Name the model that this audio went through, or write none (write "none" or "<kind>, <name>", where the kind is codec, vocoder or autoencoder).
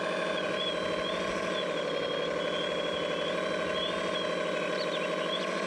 none